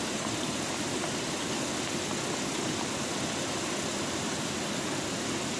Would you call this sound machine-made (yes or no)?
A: no